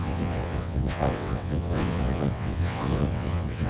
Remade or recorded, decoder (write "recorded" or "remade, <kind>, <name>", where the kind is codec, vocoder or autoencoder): remade, vocoder, WaveNeXt